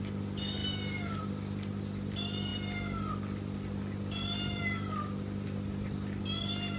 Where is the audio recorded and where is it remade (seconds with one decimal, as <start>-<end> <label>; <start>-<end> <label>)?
0.0-6.8 recorded